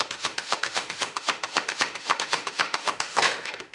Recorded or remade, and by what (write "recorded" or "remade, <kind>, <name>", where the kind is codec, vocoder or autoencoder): remade, autoencoder, DAC-VAE